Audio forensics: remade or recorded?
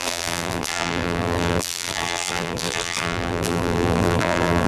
remade